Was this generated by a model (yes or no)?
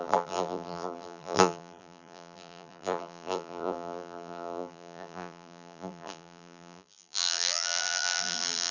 yes